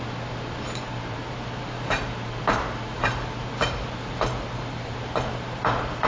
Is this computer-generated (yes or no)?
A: yes